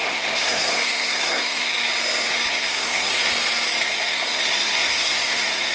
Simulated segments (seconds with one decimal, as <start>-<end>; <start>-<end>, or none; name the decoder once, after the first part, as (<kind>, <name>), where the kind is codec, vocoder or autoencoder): 0.0-1.7 (codec, SNAC); 2.5-3.3; 3.8-5.7